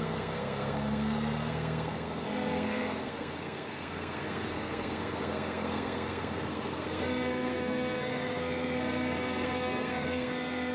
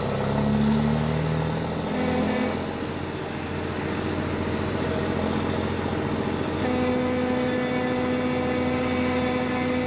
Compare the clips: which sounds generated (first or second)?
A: first